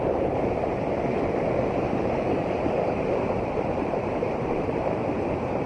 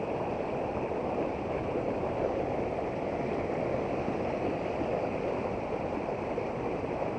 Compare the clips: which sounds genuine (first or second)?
second